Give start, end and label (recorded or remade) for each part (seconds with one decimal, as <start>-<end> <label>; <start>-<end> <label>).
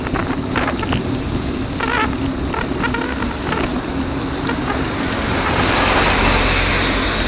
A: 0.0-7.3 recorded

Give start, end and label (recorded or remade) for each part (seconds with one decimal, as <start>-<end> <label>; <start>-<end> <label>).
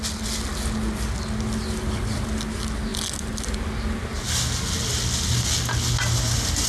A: 0.0-6.7 recorded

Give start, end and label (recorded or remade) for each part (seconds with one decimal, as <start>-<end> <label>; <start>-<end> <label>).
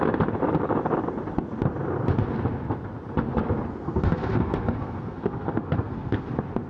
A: 0.0-3.7 recorded; 3.7-6.3 remade; 6.3-6.7 recorded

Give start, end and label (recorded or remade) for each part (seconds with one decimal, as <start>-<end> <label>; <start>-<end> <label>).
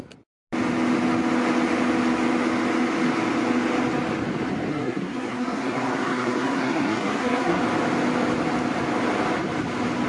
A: 0.0-4.7 recorded; 4.7-7.6 remade; 7.6-10.1 recorded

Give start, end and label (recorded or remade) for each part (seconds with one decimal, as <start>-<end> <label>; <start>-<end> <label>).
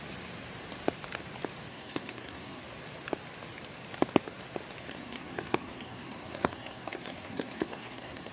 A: 0.0-1.7 recorded; 1.7-2.6 remade; 2.6-4.8 recorded; 4.8-8.3 remade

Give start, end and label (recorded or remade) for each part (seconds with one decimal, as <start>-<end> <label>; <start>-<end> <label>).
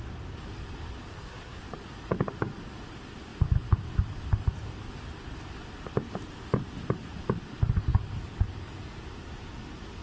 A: 0.0-1.1 recorded; 1.1-1.6 remade; 1.6-10.0 recorded